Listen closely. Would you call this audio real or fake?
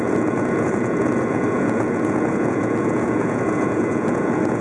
fake